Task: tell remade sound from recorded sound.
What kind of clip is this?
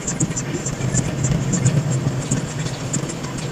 recorded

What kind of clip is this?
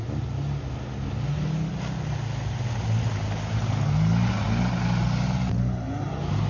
recorded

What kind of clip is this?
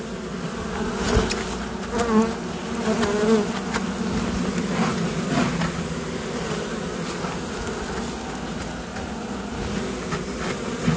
recorded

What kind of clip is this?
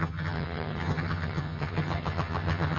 remade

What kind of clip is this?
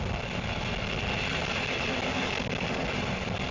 recorded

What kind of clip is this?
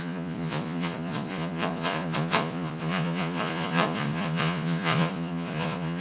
remade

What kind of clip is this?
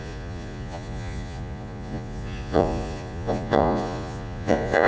remade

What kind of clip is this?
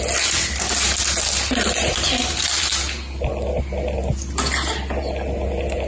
recorded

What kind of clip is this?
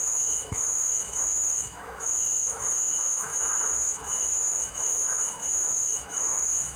remade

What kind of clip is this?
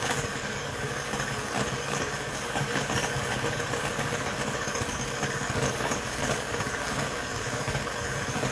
remade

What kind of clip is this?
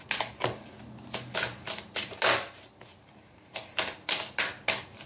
recorded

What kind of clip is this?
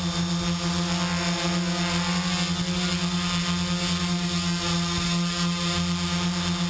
recorded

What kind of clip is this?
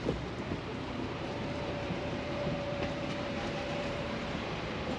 remade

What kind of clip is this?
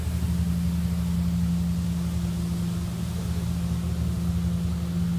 recorded